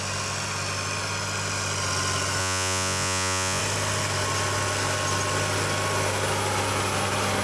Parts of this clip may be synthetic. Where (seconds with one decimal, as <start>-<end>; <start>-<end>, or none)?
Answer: 2.4-3.6